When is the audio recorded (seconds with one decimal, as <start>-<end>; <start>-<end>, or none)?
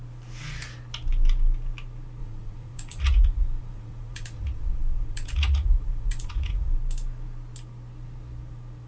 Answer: 0.0-2.2; 6.8-8.9